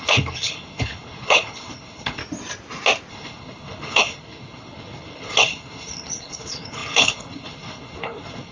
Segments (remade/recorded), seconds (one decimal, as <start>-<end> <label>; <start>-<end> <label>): 0.0-2.2 remade; 2.2-3.1 recorded; 3.1-8.5 remade